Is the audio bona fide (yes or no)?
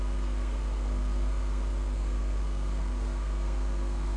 no